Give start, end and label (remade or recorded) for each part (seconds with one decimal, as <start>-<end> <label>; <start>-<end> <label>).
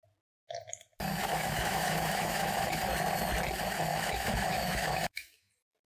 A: 0.0-1.2 recorded; 1.2-2.8 remade; 2.8-3.9 recorded; 3.9-5.5 remade; 5.5-5.9 recorded